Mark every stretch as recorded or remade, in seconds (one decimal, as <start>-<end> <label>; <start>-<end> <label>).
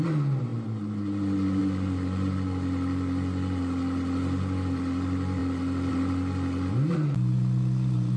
0.0-8.2 recorded